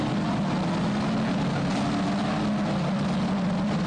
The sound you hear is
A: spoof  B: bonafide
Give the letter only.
B